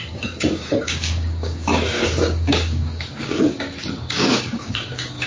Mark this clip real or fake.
fake